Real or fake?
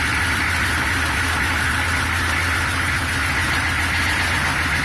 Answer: real